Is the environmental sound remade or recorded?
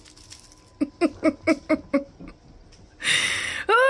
recorded